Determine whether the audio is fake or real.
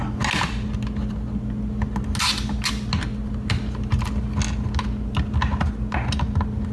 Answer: real